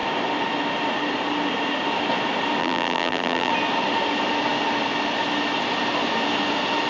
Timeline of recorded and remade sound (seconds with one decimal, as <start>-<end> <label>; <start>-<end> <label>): 0.0-2.6 recorded; 2.6-3.5 remade; 3.5-6.9 recorded